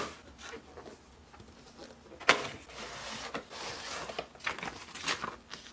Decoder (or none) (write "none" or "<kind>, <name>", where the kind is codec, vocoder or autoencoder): none